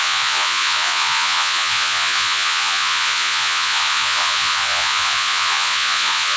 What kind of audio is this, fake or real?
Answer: fake